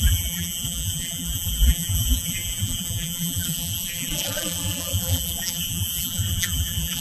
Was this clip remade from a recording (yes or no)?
yes